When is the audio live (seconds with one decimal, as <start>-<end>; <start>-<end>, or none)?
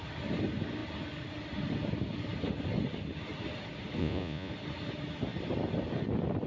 0.0-4.0; 4.5-6.5